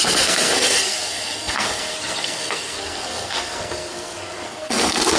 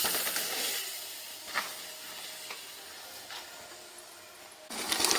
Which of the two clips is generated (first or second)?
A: first